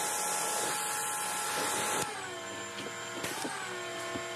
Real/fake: real